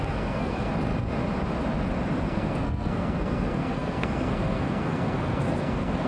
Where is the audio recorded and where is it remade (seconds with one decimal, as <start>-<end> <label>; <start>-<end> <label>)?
0.0-0.7 remade; 0.7-2.2 recorded; 2.2-6.1 remade